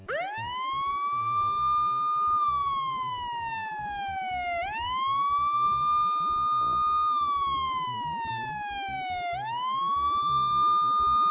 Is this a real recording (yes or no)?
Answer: yes